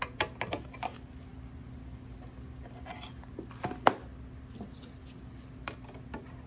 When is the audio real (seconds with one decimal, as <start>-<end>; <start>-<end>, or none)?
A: 0.0-6.5